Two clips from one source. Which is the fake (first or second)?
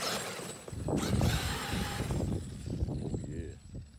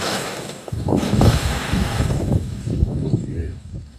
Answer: second